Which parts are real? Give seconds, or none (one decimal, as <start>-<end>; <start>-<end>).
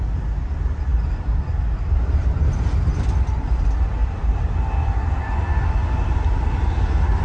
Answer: 0.0-7.2